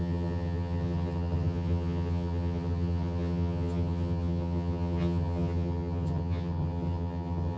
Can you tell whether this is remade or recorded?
remade